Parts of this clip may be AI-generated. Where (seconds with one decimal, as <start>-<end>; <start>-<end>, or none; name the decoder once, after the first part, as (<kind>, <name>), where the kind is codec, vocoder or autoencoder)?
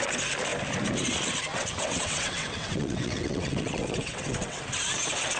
1.5-4.6 (vocoder, WaveNeXt)